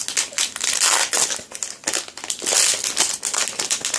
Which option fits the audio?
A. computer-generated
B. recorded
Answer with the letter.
B